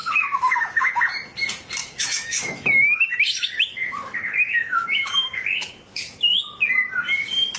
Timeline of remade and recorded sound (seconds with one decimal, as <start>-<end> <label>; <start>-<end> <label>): 0.0-0.9 remade; 0.9-1.8 recorded; 1.8-6.4 remade; 6.4-7.6 recorded